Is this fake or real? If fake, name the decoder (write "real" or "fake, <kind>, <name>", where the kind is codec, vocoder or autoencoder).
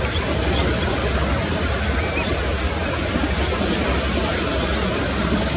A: real